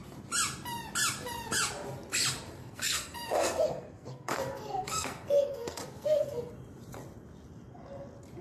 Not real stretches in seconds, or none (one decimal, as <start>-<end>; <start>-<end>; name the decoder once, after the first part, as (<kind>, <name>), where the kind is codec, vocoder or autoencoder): 2.6-6.5 (codec, SNAC)